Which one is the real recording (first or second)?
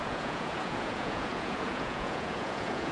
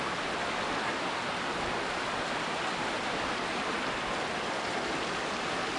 second